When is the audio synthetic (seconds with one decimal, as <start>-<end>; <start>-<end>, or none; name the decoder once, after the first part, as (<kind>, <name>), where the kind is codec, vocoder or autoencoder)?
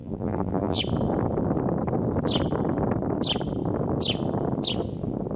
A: 0.0-0.8 (vocoder, BigVGAN v2)